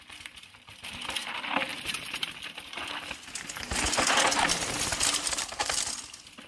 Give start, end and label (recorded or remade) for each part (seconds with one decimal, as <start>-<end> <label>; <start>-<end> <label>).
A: 0.0-6.5 recorded